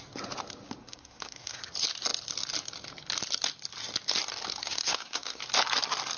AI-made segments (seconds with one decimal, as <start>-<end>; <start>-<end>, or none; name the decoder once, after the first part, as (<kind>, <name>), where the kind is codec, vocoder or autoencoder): 0.8-1.6 (codec, SNAC); 4.6-5.4